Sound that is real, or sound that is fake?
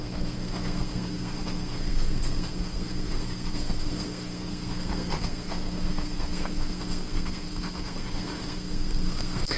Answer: fake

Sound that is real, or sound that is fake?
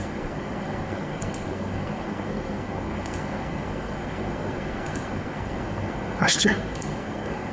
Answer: fake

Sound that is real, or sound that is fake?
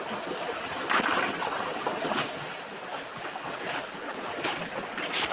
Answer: real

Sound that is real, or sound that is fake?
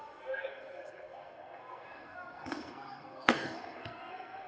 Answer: fake